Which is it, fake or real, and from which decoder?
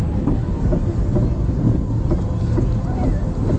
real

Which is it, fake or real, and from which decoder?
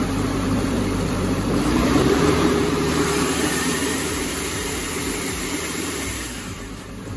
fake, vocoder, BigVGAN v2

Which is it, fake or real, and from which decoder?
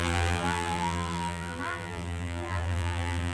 fake, vocoder, BigVGAN v2